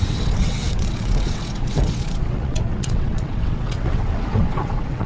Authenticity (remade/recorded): remade